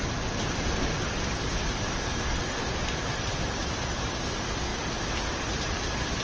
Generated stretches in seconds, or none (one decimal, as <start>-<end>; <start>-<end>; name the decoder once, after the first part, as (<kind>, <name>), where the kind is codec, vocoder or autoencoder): 3.6-6.2 (vocoder, BigVGAN v2)